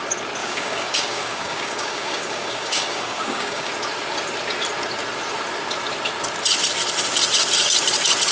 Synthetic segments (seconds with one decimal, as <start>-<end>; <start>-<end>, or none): 0.4-3.7